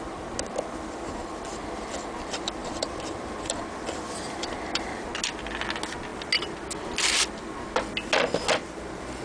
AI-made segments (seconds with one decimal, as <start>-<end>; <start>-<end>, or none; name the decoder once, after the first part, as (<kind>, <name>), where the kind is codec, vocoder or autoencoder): 2.6-5.1 (vocoder, BigVGAN v2)